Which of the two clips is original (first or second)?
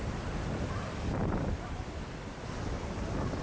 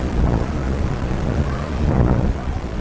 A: first